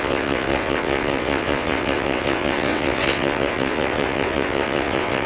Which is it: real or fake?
fake